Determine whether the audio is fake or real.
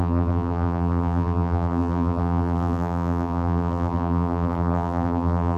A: fake